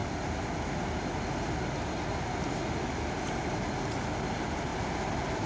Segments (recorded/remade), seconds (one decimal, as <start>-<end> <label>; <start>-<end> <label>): 0.0-5.5 recorded